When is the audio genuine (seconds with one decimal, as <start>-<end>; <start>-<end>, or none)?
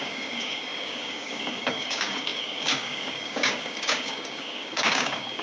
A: none